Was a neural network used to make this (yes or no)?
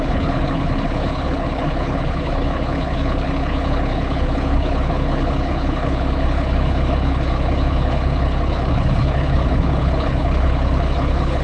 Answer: yes